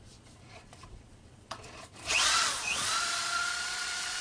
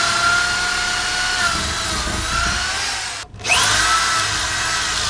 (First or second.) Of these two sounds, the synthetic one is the first